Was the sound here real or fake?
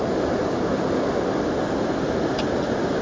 real